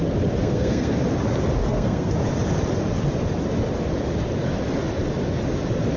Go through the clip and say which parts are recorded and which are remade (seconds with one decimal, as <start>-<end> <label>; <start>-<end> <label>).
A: 0.0-0.4 recorded; 0.4-0.9 remade; 0.9-1.6 recorded; 1.6-2.1 remade; 2.1-6.0 recorded